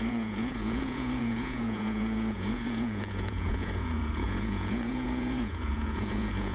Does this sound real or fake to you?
fake